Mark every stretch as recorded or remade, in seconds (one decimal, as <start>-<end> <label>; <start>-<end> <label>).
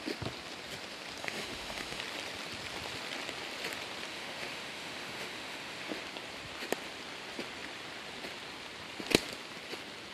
0.0-1.2 recorded; 1.2-2.0 remade; 2.0-4.1 recorded; 4.1-5.9 remade; 5.9-10.1 recorded